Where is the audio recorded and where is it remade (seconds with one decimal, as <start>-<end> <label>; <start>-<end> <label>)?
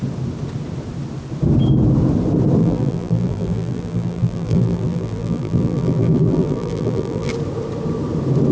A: 0.0-2.6 recorded; 2.6-7.3 remade; 7.3-8.5 recorded